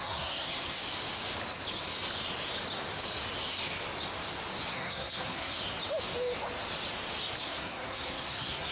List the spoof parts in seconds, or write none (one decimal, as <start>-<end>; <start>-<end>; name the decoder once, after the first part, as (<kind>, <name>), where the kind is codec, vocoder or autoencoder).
0.0-0.8 (codec, SNAC); 4.7-5.6; 7.4-8.7